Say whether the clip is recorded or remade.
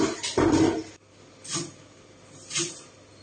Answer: recorded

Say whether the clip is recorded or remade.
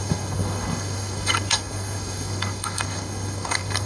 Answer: remade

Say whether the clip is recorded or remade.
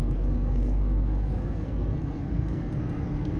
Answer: remade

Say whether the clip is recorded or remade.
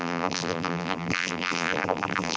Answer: remade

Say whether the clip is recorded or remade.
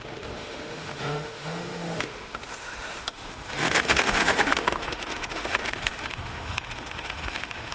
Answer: remade